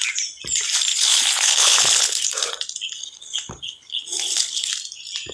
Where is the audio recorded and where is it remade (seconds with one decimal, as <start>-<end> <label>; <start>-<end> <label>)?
0.0-0.9 recorded; 0.9-2.5 remade; 2.5-3.0 recorded; 3.0-4.7 remade; 4.7-5.3 recorded